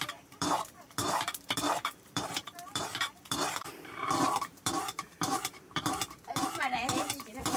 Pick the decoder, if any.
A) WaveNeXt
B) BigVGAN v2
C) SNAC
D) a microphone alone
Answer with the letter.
B